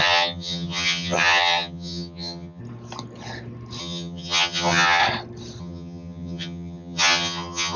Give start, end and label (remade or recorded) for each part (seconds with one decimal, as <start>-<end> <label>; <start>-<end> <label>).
0.0-2.6 remade; 2.6-3.8 recorded; 3.8-5.0 remade; 5.0-5.6 recorded; 5.6-7.8 remade